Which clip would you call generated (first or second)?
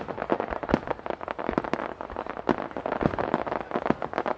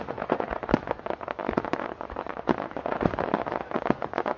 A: second